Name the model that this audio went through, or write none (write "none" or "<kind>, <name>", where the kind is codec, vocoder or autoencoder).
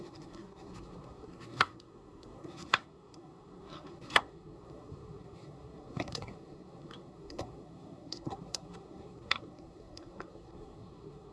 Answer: codec, SNAC